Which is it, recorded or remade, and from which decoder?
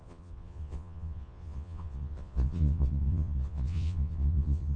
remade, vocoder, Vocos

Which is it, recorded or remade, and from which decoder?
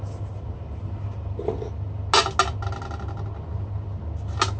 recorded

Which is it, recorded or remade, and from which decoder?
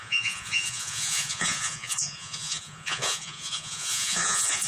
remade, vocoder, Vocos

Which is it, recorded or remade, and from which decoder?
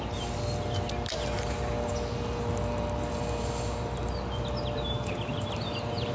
recorded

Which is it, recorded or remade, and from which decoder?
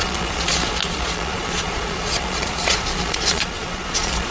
remade, vocoder, Vocos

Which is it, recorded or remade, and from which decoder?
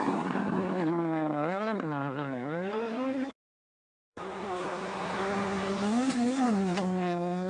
remade, codec, SNAC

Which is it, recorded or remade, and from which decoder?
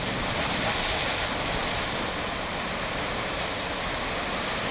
recorded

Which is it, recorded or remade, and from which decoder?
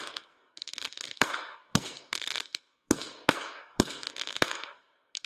remade, codec, SNAC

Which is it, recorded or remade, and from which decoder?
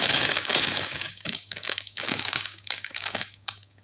remade, codec, DAC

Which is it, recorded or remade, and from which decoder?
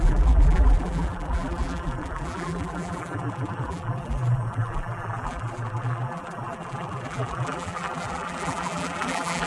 remade, vocoder, BigVGAN v2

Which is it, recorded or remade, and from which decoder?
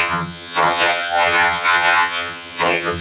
remade, vocoder, HiFi-GAN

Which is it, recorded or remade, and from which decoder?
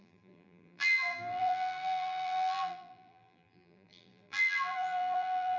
remade, vocoder, BigVGAN v2